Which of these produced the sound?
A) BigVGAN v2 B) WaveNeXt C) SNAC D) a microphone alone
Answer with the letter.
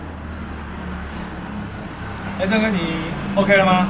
D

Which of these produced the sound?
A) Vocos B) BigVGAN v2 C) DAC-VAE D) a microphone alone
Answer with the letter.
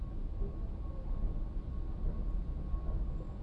D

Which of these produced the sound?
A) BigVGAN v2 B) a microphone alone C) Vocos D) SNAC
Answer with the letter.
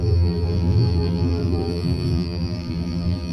A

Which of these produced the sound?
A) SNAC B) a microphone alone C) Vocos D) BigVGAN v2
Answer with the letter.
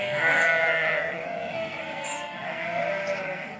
A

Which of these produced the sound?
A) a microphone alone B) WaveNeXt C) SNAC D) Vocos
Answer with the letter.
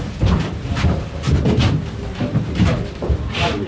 A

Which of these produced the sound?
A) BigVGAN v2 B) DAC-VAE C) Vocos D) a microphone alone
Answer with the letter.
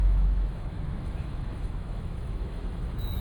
B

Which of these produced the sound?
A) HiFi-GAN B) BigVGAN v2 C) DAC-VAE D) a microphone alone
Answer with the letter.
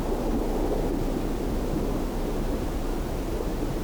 D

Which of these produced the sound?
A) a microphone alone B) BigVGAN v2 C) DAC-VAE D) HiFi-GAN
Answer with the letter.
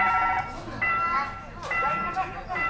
A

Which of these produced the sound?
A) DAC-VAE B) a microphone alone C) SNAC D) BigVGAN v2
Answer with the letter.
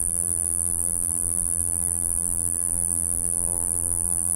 D